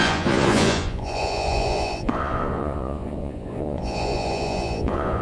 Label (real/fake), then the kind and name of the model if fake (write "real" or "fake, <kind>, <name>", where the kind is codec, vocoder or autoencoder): fake, vocoder, Vocos